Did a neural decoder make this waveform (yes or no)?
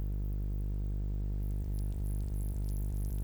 yes